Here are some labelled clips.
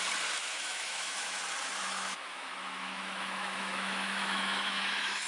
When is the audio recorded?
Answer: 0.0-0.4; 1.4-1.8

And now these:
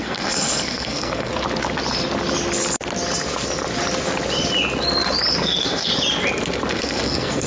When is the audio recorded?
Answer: 1.3-5.3; 5.9-6.7